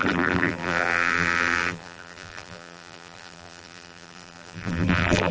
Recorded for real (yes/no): no